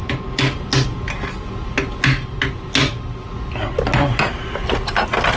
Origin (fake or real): real